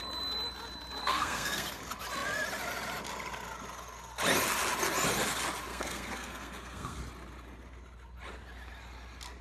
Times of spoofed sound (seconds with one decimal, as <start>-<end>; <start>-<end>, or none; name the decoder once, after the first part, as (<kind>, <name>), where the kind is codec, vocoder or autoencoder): 1.0-1.8 (codec, SNAC); 5.7-7.0